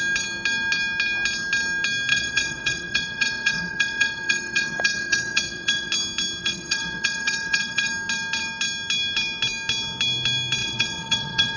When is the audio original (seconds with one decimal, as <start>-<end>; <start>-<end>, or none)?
0.0-2.1; 5.9-6.4; 7.9-10.6